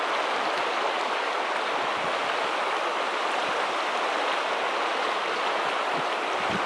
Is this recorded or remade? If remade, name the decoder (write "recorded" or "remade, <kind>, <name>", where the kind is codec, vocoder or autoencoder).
recorded